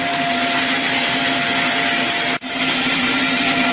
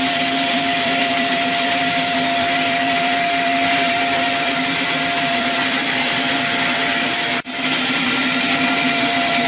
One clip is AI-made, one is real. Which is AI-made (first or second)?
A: second